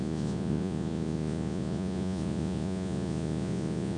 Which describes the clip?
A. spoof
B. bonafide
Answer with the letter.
A